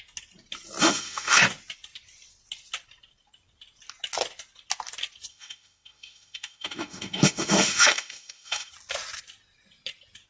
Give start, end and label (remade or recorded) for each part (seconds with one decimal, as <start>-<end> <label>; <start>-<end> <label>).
0.0-0.8 recorded; 0.8-1.4 remade; 1.4-5.3 recorded; 5.3-8.7 remade; 8.7-10.3 recorded